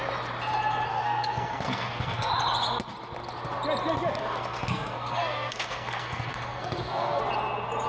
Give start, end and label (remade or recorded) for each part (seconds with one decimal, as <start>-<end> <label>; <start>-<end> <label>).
0.0-0.9 recorded; 0.9-2.3 remade; 2.3-4.2 recorded; 4.2-7.2 remade; 7.2-7.9 recorded